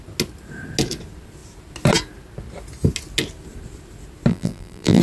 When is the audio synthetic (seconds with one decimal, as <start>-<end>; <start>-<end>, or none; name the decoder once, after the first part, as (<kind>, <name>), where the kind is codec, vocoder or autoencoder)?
4.3-5.0 (vocoder, BigVGAN v2)